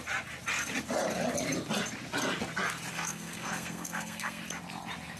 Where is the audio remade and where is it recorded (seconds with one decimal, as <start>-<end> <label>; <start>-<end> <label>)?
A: 0.0-2.9 recorded; 2.9-4.4 remade; 4.4-5.2 recorded